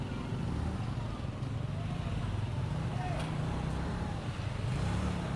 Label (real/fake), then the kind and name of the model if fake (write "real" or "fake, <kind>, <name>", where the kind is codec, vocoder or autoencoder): real